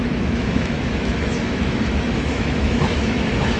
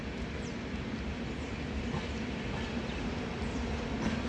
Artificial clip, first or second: first